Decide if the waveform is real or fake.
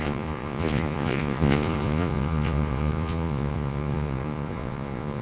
fake